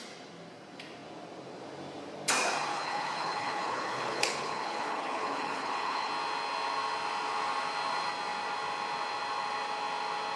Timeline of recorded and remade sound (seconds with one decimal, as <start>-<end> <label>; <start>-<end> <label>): 0.0-2.7 recorded; 2.7-6.1 remade; 6.1-10.4 recorded